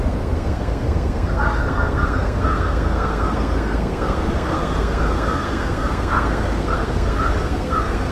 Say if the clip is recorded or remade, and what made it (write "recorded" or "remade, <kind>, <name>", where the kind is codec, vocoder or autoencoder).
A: remade, codec, SNAC